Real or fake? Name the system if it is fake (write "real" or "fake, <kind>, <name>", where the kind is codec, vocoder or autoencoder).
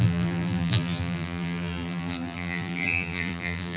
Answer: fake, vocoder, BigVGAN v2